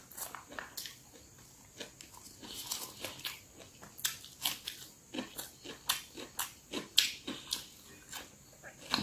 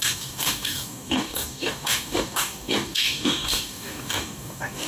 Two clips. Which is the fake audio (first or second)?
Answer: second